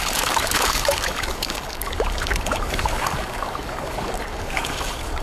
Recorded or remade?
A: remade